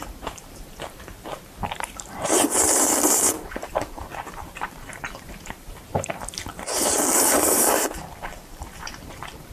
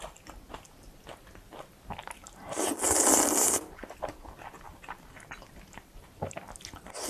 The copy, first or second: first